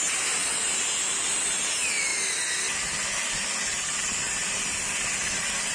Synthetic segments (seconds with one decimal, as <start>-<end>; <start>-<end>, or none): none